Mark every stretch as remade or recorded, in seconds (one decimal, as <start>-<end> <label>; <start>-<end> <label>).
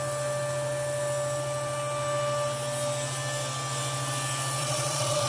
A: 0.0-4.6 recorded; 4.6-5.3 remade